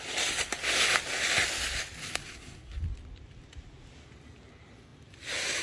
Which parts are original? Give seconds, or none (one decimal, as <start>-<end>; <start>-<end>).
0.0-2.2; 2.8-5.6